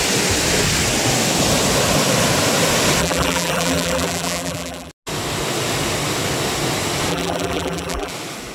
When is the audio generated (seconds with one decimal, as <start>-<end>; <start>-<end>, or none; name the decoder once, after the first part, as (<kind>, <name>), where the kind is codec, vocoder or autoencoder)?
3.0-4.9 (vocoder, BigVGAN v2); 7.1-8.1